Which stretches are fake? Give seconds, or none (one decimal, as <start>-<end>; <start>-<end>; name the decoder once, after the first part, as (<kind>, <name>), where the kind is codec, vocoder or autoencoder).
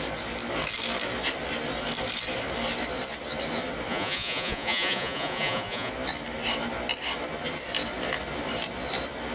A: 3.9-5.9 (vocoder, Vocos)